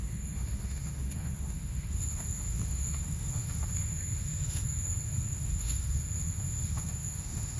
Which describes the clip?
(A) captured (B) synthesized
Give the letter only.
B